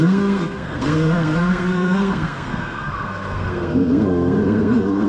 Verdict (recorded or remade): remade